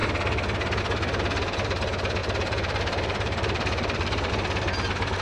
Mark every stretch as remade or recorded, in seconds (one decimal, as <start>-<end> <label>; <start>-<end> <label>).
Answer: 0.0-2.2 recorded; 2.2-4.3 remade; 4.3-5.2 recorded